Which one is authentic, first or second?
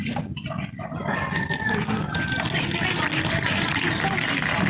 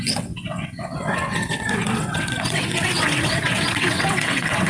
first